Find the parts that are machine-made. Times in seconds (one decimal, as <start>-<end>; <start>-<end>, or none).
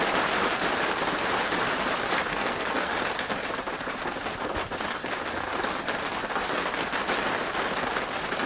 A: 2.3-2.9